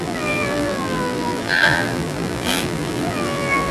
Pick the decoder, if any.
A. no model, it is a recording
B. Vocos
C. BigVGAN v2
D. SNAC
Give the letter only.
C